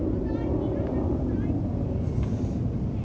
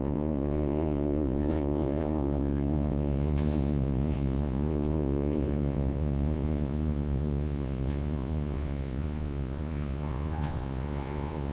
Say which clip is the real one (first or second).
first